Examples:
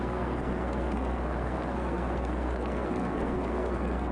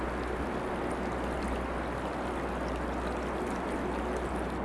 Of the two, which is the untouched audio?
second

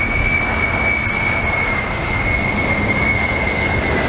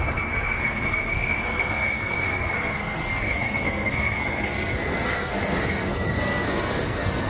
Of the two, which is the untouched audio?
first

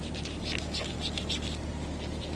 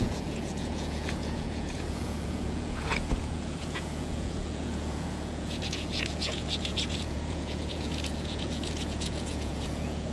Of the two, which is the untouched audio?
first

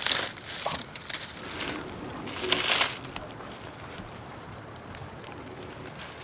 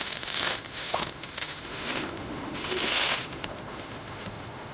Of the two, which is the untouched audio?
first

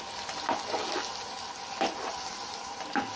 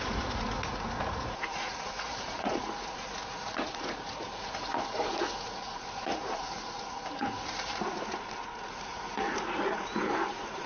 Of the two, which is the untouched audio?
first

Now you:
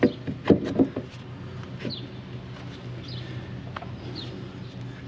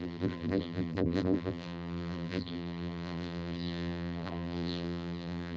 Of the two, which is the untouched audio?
first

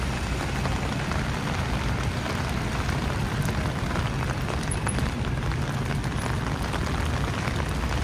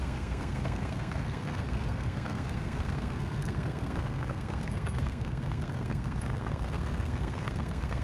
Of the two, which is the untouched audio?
first